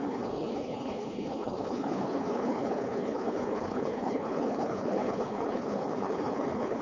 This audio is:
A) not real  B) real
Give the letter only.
A